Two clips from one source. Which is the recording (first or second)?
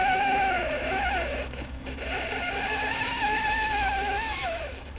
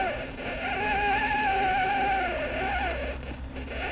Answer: second